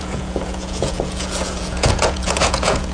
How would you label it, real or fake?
fake